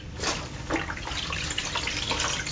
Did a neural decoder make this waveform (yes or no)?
no